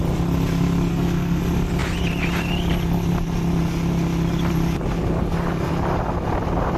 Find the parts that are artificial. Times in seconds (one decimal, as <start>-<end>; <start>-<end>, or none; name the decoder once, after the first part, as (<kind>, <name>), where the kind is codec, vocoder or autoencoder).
0.9-1.4 (codec, SNAC)